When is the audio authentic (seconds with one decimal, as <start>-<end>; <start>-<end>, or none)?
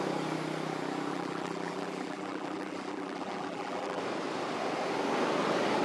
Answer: 0.0-1.1; 4.0-5.8